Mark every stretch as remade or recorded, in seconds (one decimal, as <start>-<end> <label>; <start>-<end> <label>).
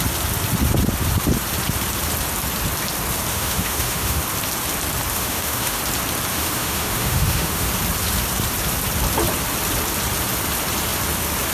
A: 0.0-3.3 recorded; 3.3-4.2 remade; 4.2-5.1 recorded; 5.1-5.8 remade; 5.8-6.3 recorded; 6.3-7.7 remade; 7.7-11.5 recorded